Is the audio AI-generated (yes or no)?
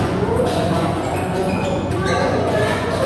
yes